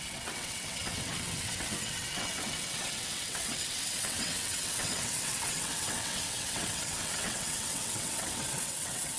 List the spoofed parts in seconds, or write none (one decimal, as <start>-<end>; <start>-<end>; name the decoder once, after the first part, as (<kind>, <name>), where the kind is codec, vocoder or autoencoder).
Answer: 0.0-9.2 (vocoder, WaveNeXt)

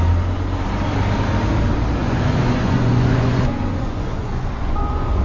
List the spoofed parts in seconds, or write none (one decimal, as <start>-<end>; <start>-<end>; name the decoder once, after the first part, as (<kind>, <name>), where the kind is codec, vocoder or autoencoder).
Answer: 2.0-5.2 (vocoder, Vocos)

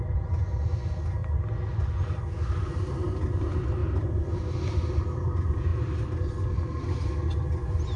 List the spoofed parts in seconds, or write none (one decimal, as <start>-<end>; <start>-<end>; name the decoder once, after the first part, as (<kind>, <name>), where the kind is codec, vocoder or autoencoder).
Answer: none

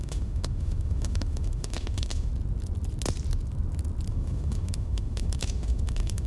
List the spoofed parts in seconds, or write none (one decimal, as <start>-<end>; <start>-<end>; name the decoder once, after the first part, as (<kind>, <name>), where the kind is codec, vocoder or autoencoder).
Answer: 0.0-2.3 (autoencoder, DAC-VAE); 4.1-6.3